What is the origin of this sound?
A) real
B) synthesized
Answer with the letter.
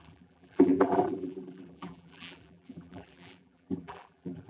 B